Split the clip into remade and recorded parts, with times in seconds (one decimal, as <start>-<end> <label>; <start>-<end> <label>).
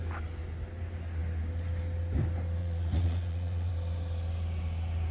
0.0-2.6 recorded; 2.6-3.7 remade; 3.7-5.1 recorded